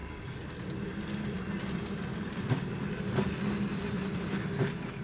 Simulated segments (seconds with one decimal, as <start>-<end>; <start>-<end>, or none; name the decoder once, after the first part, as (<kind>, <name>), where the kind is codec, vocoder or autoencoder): none

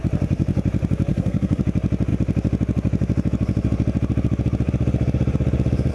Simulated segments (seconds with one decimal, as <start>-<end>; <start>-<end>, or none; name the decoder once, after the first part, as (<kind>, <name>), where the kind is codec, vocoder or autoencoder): 1.1-1.6 (codec, SNAC)

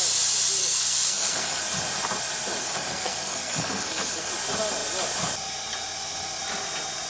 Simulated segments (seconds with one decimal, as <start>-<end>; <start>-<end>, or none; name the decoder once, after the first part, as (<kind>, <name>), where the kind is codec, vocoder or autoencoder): 0.6-1.6 (codec, SNAC); 2.6-4.3

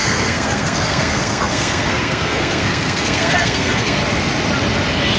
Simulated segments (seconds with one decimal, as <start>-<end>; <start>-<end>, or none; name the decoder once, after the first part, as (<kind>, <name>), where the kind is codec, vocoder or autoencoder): 0.0-4.0 (codec, SNAC)

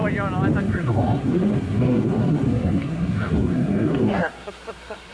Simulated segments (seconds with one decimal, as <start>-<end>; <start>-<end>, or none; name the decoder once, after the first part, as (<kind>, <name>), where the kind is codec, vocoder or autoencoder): 0.6-5.1 (codec, SNAC)

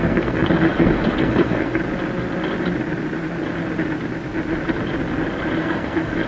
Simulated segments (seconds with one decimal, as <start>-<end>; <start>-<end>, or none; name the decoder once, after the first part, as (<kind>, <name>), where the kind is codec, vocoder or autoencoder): 0.0-1.8 (codec, SNAC); 5.6-6.3